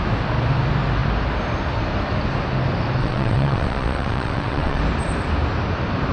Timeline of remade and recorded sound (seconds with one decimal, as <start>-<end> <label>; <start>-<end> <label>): 0.0-3.0 recorded; 3.0-4.8 remade; 4.8-6.1 recorded